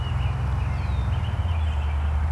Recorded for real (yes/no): yes